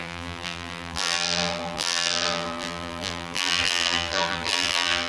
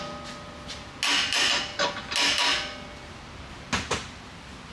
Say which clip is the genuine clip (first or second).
second